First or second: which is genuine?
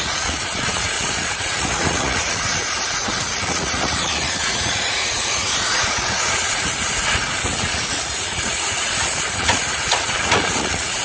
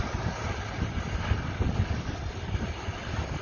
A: second